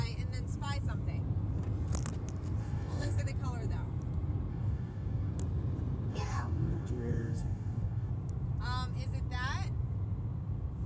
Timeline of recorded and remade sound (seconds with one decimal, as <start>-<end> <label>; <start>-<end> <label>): 0.0-2.6 recorded; 2.6-3.2 remade; 3.2-4.5 recorded; 4.5-5.3 remade; 5.3-6.1 recorded; 6.1-8.1 remade; 8.1-10.9 recorded